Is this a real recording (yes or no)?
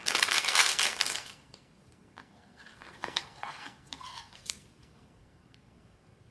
no